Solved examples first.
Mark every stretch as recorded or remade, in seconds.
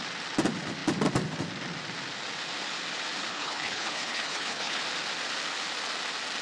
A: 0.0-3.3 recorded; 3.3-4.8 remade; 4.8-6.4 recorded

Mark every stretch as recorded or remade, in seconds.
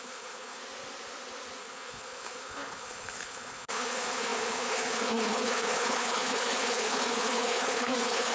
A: 0.0-0.6 remade; 0.6-1.6 recorded; 1.6-8.3 remade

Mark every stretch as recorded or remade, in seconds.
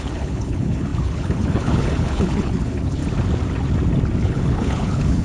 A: 0.0-3.0 remade; 3.0-4.2 recorded; 4.2-5.2 remade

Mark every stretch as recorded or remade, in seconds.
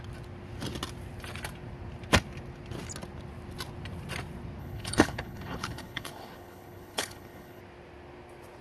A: 0.0-4.6 recorded; 4.6-7.6 remade; 7.6-8.6 recorded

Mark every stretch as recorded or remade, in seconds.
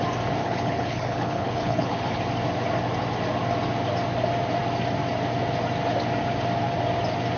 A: 0.0-0.4 recorded; 0.4-2.2 remade; 2.2-7.4 recorded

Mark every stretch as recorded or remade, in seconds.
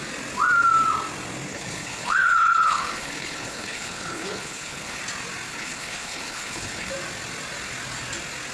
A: 0.0-1.5 recorded; 1.5-5.0 remade; 5.0-5.5 recorded; 5.5-6.9 remade; 6.9-8.5 recorded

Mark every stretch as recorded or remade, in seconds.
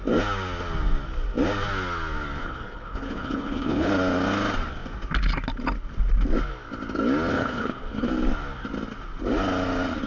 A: 0.0-2.4 recorded; 2.4-3.9 remade; 3.9-7.3 recorded; 7.3-8.1 remade; 8.1-10.1 recorded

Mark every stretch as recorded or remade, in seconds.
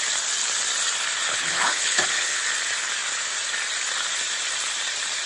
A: 0.0-1.3 recorded; 1.3-2.4 remade; 2.4-5.3 recorded